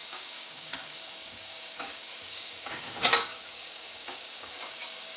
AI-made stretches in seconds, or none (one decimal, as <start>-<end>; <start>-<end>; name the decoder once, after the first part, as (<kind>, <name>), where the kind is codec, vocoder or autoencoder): 0.0-5.2 (codec, DAC)